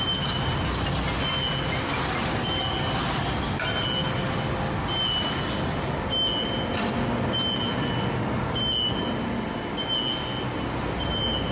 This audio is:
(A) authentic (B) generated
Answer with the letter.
A